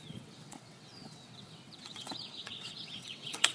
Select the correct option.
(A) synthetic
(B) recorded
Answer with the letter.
A